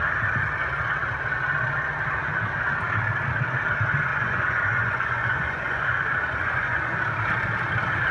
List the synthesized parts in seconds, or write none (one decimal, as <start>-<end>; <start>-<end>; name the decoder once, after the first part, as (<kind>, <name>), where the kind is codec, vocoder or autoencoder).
4.1-7.0 (vocoder, Vocos)